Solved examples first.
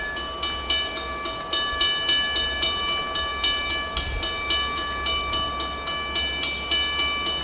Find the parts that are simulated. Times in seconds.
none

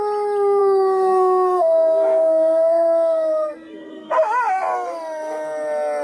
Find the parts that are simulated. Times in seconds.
0.6-4.2 (codec, SNAC)